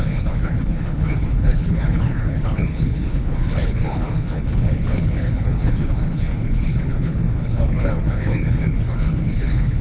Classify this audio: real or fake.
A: fake